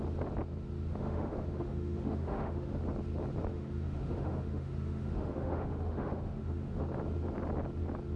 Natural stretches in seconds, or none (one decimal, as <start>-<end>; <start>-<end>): 0.0-0.9; 2.8-3.5; 6.8-8.2